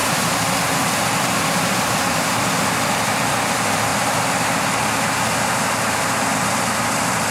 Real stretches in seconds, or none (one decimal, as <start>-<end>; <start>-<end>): 0.0-0.9; 3.9-6.2